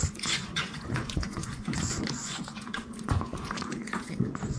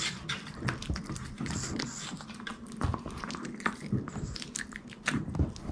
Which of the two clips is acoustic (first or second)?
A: second